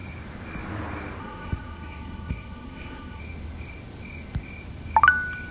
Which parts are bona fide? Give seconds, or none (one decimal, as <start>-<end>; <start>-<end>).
0.0-1.2; 3.2-5.5